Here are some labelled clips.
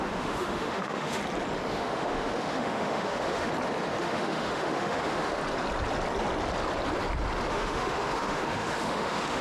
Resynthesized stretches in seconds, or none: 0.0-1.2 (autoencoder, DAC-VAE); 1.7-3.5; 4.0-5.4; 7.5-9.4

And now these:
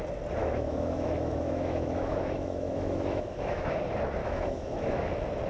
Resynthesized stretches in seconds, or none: 0.4-3.7 (autoencoder, DAC-VAE); 4.2-5.1

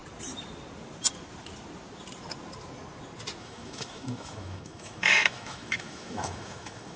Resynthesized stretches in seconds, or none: 3.4-7.0 (autoencoder, DAC-VAE)

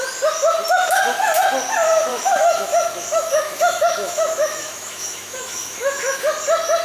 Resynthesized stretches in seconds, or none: 2.1-6.2 (autoencoder, DAC-VAE)